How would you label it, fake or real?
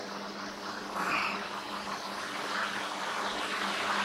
fake